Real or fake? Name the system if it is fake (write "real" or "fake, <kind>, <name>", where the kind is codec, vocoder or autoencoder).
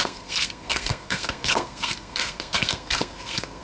fake, codec, SNAC